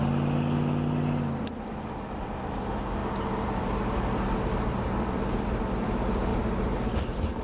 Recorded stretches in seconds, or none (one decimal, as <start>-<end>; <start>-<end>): 0.0-7.4